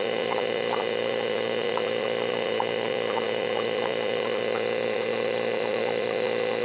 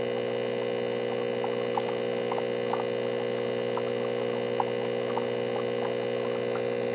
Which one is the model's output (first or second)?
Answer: first